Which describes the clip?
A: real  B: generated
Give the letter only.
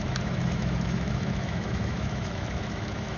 B